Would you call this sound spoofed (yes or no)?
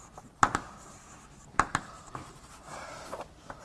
yes